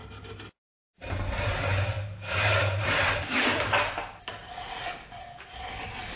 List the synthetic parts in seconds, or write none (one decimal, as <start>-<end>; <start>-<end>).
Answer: 1.9-5.6